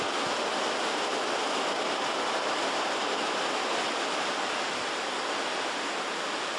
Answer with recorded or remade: recorded